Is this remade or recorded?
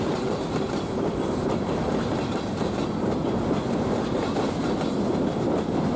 recorded